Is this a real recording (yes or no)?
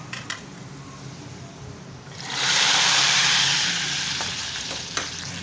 no